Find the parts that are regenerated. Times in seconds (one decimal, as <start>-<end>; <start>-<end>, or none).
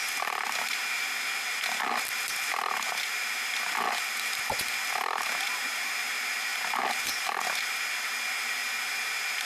none